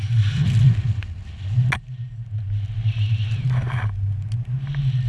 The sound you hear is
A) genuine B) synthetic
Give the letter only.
A